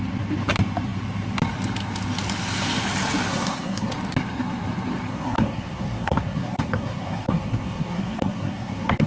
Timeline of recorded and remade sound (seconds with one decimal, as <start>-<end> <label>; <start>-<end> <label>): 0.0-3.3 recorded; 3.3-3.9 remade; 3.9-5.1 recorded; 5.1-9.1 remade